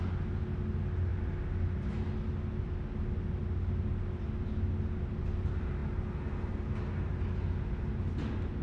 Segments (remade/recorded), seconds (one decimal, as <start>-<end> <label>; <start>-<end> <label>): 0.0-8.6 recorded

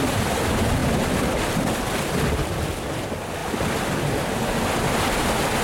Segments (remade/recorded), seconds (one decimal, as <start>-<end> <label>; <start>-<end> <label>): 0.0-5.6 recorded

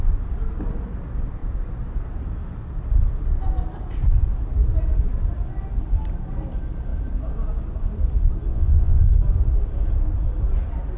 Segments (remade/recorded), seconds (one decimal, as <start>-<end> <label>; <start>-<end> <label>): 0.0-8.5 recorded; 8.5-9.0 remade; 9.0-11.0 recorded

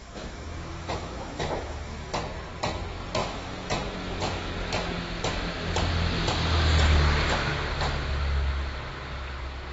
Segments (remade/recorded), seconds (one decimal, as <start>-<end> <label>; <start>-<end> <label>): 0.0-2.2 remade; 2.2-3.2 recorded; 3.2-4.5 remade; 4.5-9.7 recorded

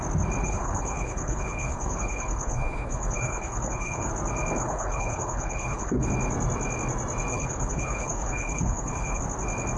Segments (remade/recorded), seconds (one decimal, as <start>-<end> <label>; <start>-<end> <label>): 0.0-0.4 recorded; 0.4-4.1 remade; 4.1-4.6 recorded; 4.6-6.1 remade; 6.1-7.3 recorded; 7.3-9.2 remade; 9.2-9.8 recorded

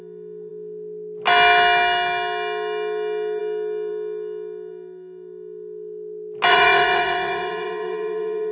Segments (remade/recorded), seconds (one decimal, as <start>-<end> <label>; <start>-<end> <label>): 0.0-6.5 recorded; 6.5-8.5 remade

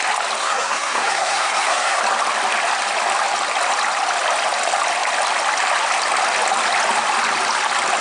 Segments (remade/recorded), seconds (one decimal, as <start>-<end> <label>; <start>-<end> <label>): 0.0-0.4 recorded; 0.4-2.0 remade; 2.0-8.0 recorded